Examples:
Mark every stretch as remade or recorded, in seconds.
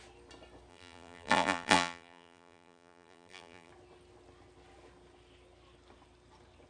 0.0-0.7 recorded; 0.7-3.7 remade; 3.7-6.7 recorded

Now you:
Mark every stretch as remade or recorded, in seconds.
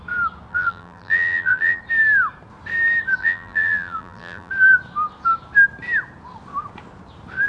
0.0-0.5 recorded; 0.5-1.8 remade; 1.8-3.2 recorded; 3.2-4.5 remade; 4.5-7.5 recorded